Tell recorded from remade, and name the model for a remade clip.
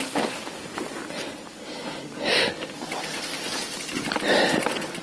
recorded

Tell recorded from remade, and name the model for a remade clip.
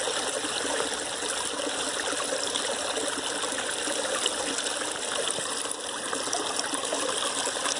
recorded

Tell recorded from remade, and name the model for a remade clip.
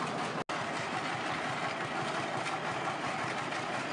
recorded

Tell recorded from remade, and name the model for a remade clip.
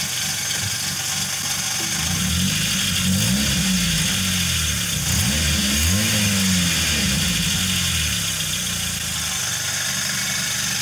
recorded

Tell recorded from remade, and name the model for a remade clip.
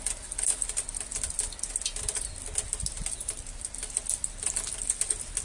recorded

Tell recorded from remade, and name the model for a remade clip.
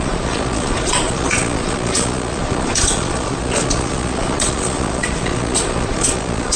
remade, vocoder, Vocos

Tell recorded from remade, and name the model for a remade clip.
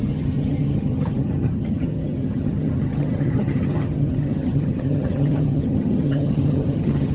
remade, vocoder, HiFi-GAN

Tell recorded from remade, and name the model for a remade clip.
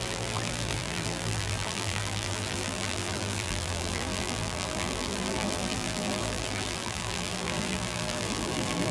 remade, vocoder, BigVGAN v2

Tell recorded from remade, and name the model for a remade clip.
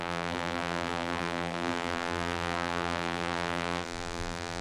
remade, vocoder, BigVGAN v2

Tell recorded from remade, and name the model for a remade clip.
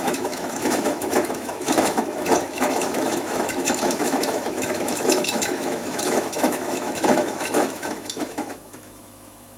remade, autoencoder, DAC-VAE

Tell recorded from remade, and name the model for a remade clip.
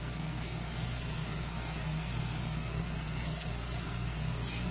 remade, codec, SNAC